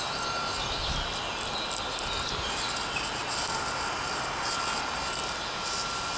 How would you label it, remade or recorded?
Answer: recorded